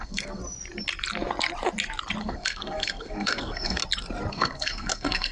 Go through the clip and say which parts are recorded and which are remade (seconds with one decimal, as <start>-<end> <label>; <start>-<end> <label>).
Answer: 0.0-0.4 remade; 0.4-2.2 recorded; 2.2-3.8 remade; 3.8-4.3 recorded; 4.3-5.3 remade